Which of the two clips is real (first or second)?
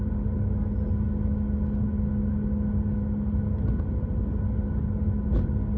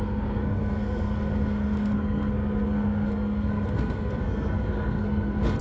first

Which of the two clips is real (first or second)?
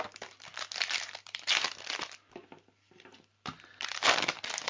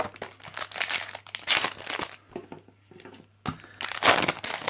second